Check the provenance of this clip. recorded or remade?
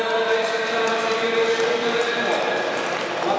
recorded